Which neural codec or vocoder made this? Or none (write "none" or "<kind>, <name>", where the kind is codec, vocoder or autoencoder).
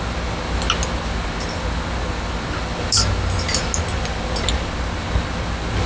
none